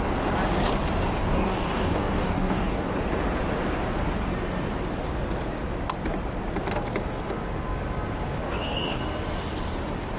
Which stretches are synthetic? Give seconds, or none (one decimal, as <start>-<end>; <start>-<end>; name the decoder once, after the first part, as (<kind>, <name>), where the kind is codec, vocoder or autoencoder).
1.2-2.9 (codec, DAC); 8.4-9.0